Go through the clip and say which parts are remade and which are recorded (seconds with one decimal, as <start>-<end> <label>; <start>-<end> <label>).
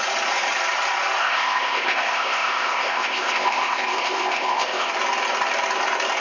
0.0-1.2 recorded; 1.2-4.9 remade; 4.9-6.2 recorded